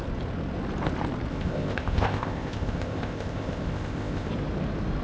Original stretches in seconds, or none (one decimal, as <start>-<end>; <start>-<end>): 0.0-1.3; 4.3-5.0